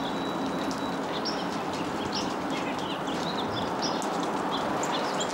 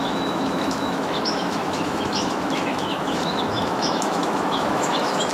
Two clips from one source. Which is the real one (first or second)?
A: first